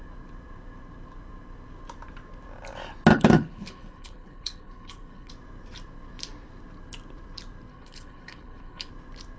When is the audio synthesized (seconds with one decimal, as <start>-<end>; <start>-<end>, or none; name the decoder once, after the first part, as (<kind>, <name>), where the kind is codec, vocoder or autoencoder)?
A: 3.1-5.3 (codec, HILCodec); 7.7-8.9